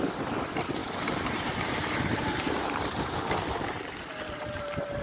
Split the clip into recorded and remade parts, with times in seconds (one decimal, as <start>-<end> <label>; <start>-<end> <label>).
0.0-0.8 recorded; 0.8-3.8 remade; 3.8-5.0 recorded